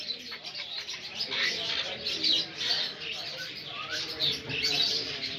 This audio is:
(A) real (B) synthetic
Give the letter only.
B